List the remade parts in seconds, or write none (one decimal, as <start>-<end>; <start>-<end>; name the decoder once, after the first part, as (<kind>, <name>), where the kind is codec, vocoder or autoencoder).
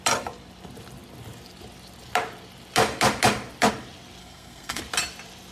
4.2-4.8 (codec, SNAC)